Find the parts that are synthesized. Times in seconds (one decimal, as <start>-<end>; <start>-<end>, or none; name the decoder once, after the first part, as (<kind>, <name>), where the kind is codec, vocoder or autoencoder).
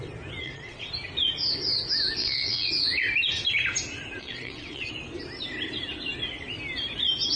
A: 0.4-0.9 (vocoder, WaveNeXt); 2.2-2.7; 4.2-4.9